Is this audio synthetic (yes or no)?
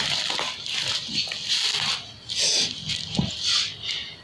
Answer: no